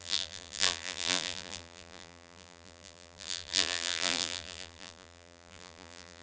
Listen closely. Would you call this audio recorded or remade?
remade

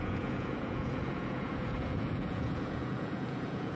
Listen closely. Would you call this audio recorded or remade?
remade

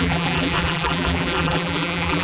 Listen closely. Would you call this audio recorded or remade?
remade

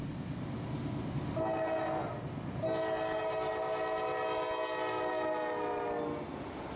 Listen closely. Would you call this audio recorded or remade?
recorded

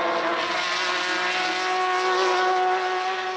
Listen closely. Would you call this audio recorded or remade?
recorded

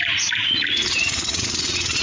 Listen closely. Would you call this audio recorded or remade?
remade